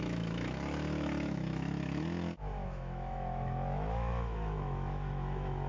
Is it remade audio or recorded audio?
remade